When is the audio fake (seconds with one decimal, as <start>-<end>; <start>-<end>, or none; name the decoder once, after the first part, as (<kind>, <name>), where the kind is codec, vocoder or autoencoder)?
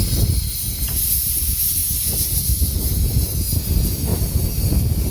4.1-5.1 (vocoder, BigVGAN v2)